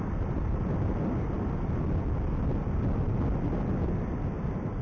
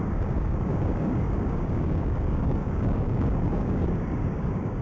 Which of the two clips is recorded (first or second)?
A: first